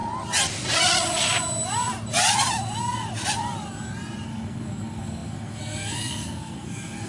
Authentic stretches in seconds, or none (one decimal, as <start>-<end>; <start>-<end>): 0.0-4.3